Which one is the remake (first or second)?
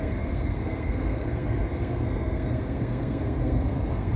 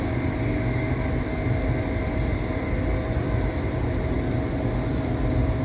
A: first